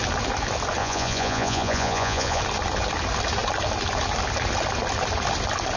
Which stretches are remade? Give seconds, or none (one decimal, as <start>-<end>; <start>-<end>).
0.8-2.4